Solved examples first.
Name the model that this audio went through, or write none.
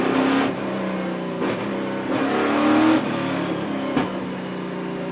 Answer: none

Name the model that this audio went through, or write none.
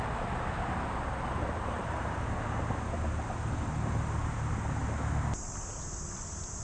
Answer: none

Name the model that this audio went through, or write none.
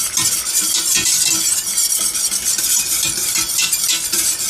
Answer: none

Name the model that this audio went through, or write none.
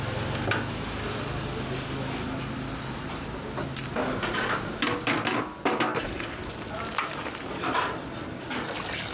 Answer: none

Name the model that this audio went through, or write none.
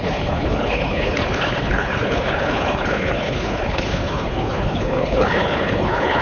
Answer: codec, HILCodec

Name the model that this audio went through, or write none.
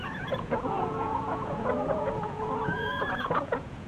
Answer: vocoder, Vocos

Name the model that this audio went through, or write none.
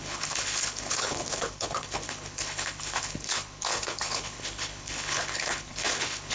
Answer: codec, HILCodec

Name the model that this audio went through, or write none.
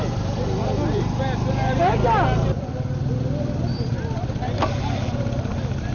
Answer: none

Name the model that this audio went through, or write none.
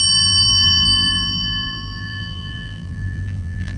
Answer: vocoder, BigVGAN v2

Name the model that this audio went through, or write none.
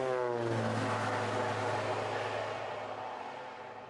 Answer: none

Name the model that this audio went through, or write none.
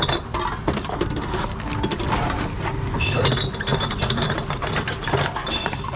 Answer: none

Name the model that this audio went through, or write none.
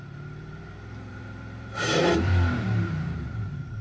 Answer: vocoder, BigVGAN v2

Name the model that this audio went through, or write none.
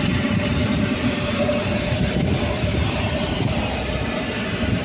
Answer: vocoder, BigVGAN v2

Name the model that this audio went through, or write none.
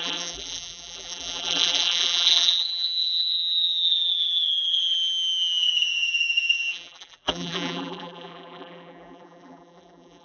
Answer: vocoder, BigVGAN v2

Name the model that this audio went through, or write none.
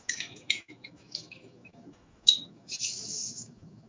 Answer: autoencoder, DAC-VAE